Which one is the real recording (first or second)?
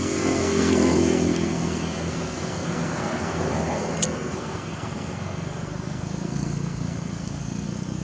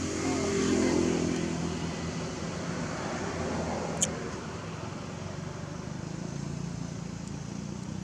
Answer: second